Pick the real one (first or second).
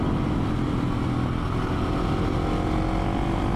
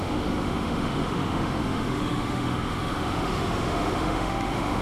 first